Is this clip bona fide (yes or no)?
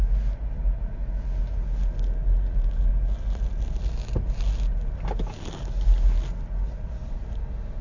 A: yes